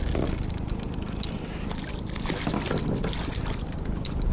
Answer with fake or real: real